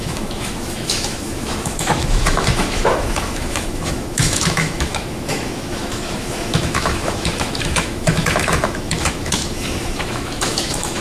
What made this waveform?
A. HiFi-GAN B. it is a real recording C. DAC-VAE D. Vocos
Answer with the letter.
C